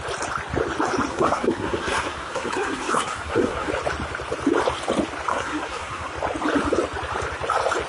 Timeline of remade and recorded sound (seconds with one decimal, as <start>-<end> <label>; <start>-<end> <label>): 0.0-1.1 recorded; 1.1-3.7 remade; 3.7-5.3 recorded; 5.3-6.1 remade; 6.1-7.9 recorded